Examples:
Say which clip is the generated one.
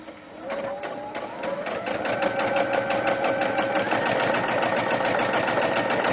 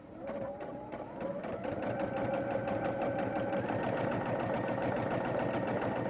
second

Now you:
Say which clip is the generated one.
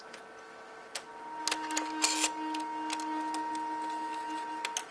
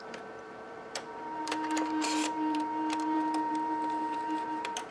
second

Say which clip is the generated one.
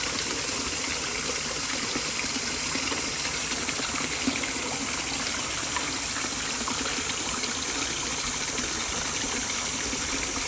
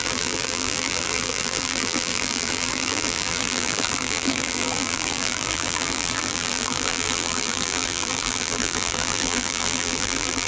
second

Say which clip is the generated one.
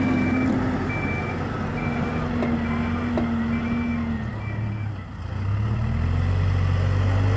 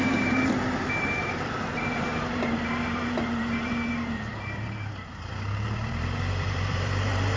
second